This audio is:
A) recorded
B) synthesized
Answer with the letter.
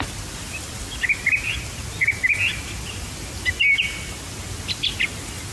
A